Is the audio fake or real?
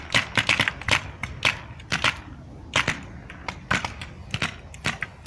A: real